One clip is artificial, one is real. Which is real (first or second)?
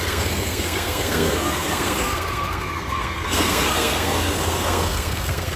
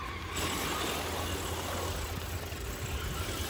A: second